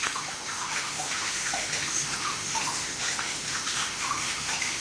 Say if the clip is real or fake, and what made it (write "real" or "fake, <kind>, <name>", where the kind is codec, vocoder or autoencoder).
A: fake, autoencoder, DAC-VAE